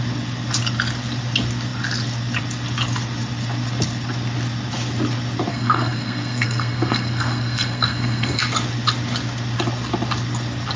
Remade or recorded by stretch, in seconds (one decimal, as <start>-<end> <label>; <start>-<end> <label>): 0.0-5.5 recorded; 5.5-8.4 remade; 8.4-10.8 recorded